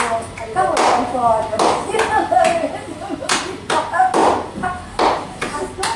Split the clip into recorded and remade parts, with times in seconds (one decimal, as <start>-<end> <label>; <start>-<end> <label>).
0.0-6.0 recorded